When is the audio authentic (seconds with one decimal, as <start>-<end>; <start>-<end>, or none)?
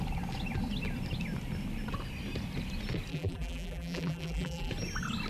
0.0-3.1; 4.7-5.3